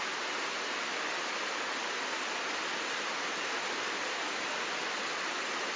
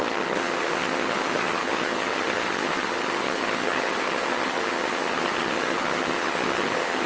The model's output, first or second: second